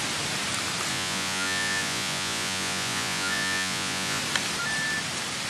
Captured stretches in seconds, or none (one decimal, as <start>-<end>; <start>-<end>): 0.0-0.9; 4.2-5.5